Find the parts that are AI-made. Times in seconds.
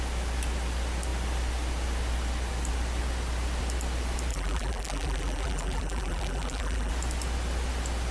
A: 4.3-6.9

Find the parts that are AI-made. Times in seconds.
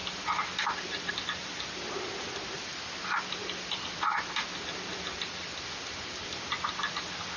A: 0.0-1.1; 2.7-7.0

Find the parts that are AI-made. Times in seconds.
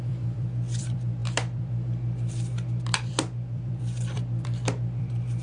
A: 0.0-5.4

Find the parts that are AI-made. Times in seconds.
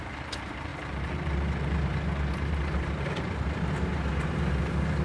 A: 0.0-5.0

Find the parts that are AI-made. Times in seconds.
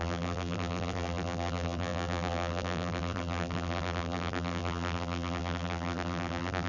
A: 0.0-6.7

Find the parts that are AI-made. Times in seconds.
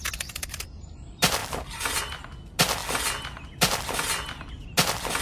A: none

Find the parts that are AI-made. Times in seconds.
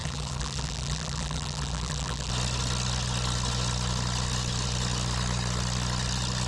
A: 0.0-2.3